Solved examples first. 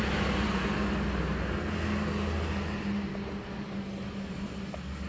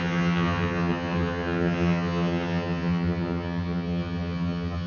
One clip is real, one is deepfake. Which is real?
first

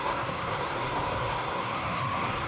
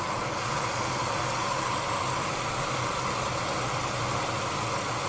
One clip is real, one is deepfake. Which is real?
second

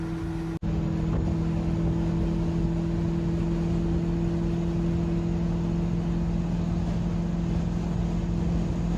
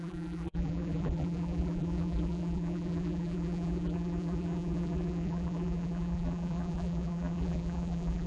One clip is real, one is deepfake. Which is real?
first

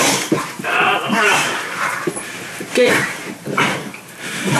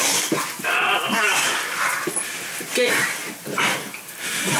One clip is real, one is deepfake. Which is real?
second